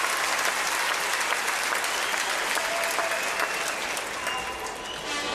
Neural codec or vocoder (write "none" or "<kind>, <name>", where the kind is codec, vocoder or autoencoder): none